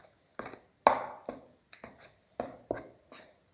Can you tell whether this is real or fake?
real